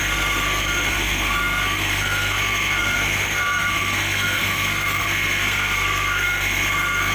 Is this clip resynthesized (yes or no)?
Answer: yes